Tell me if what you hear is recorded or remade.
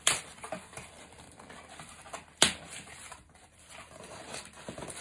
remade